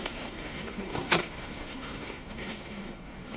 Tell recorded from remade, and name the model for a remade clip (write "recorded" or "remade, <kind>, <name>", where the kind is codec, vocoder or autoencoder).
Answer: remade, codec, SNAC